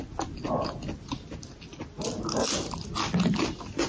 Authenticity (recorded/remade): recorded